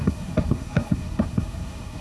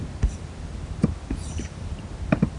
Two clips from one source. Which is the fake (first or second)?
first